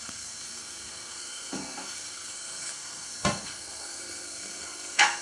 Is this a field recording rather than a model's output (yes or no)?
no